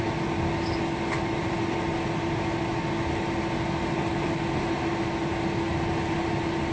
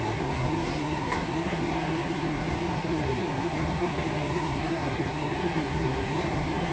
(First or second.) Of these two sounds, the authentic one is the first